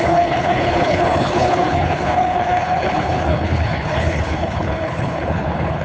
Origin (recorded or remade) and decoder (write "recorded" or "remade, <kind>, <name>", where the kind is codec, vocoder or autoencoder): remade, codec, HILCodec